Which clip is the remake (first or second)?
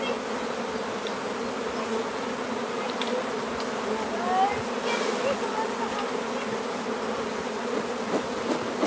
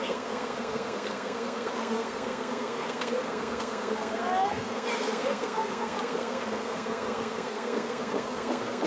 second